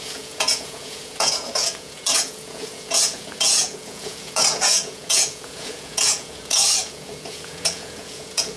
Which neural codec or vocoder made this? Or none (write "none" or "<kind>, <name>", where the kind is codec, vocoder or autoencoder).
vocoder, Vocos